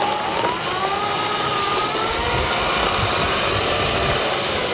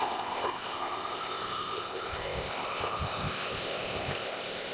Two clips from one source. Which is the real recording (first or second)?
first